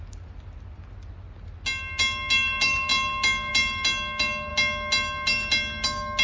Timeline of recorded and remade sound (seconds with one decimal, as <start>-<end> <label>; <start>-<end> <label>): 0.0-6.2 recorded